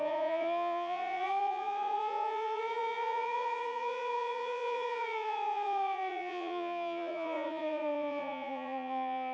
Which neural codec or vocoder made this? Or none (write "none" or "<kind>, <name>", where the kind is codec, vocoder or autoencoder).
vocoder, Vocos